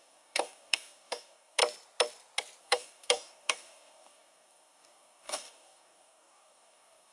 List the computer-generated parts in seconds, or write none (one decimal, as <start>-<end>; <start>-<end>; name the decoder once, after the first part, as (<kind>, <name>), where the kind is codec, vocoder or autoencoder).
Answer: 0.0-1.6 (codec, DAC); 2.6-7.1